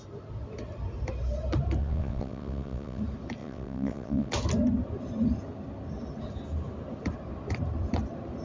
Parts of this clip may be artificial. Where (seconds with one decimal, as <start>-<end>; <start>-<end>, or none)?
1.8-3.0; 3.4-4.3